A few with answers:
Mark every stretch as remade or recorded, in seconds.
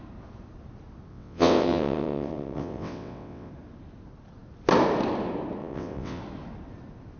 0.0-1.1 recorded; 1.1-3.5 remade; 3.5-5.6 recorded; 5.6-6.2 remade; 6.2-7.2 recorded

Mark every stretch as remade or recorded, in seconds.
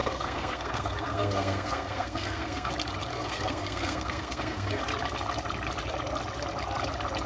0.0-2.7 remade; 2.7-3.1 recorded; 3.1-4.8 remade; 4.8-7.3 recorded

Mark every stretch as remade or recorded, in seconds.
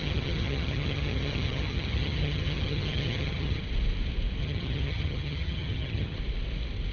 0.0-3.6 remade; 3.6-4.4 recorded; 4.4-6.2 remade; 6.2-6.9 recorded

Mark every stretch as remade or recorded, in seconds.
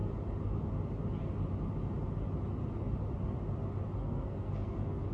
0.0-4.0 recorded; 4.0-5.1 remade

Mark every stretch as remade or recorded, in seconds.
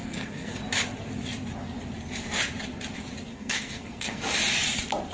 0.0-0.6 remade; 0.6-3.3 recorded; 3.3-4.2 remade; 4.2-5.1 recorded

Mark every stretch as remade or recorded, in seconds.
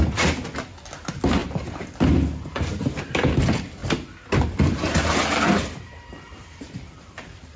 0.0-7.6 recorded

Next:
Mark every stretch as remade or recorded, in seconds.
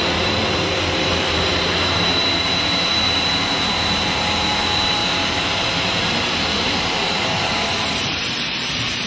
0.0-9.1 remade